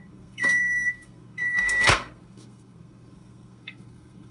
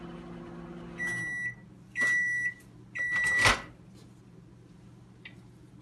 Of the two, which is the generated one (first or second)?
first